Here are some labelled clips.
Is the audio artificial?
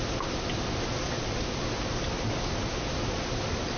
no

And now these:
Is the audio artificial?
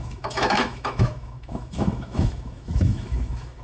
yes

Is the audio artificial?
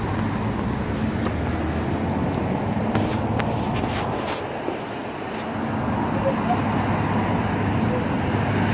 no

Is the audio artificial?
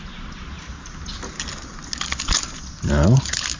no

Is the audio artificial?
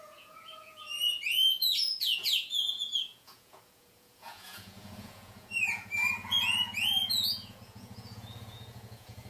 yes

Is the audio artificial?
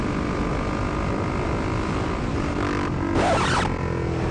no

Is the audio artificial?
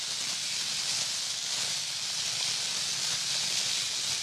no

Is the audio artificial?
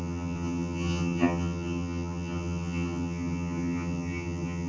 yes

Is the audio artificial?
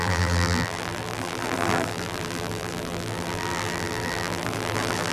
yes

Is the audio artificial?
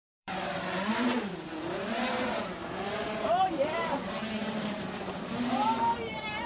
yes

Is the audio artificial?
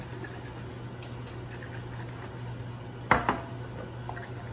no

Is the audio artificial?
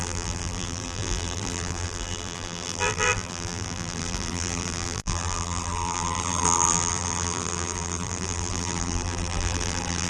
yes